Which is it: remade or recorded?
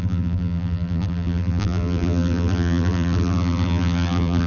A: remade